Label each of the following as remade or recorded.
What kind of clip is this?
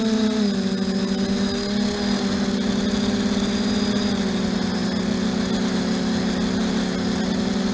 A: recorded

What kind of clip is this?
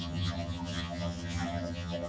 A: remade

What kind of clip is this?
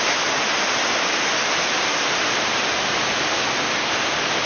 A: recorded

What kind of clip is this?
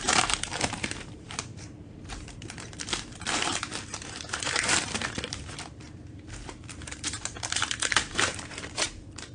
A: remade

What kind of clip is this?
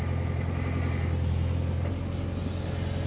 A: recorded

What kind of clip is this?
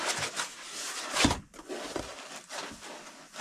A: recorded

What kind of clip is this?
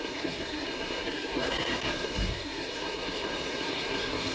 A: remade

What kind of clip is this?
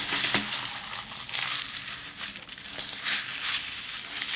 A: recorded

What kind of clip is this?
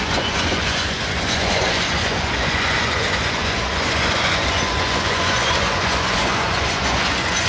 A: remade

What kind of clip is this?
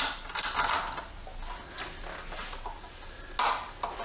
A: recorded